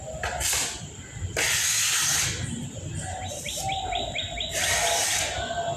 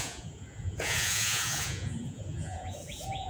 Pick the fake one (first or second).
second